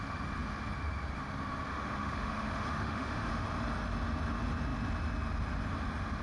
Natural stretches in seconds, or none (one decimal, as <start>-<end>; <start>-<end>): 0.0-1.7; 3.3-6.2